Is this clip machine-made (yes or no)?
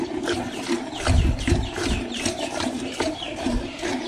yes